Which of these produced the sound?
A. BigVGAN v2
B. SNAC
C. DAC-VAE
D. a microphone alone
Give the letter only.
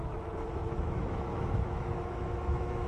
C